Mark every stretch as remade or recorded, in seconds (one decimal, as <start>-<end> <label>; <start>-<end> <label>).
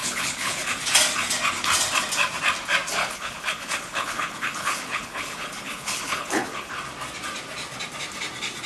0.0-0.7 remade; 0.7-3.0 recorded; 3.0-6.7 remade; 6.7-8.7 recorded